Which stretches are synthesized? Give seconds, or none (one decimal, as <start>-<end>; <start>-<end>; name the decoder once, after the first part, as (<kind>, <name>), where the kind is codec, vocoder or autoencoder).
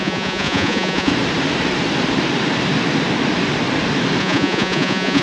0.0-1.1 (vocoder, Vocos); 4.2-5.2